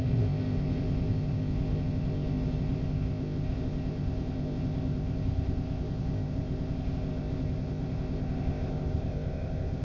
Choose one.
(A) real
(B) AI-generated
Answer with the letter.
B